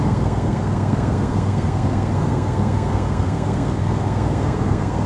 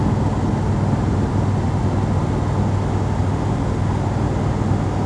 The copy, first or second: first